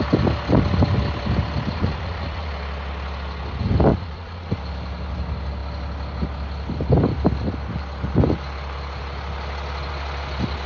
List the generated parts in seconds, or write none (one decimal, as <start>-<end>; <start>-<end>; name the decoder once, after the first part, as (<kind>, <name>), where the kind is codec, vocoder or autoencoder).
1.7-2.5 (vocoder, Vocos); 3.9-4.5